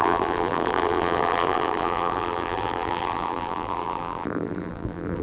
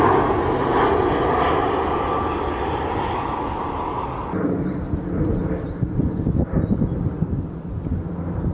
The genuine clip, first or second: second